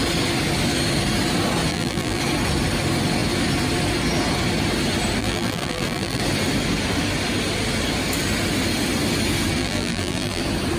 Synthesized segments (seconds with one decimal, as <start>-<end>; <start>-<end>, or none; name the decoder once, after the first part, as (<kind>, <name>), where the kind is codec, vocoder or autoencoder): 1.7-2.2 (vocoder, BigVGAN v2); 5.2-6.2; 9.6-10.4